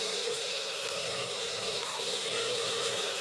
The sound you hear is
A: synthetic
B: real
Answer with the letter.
A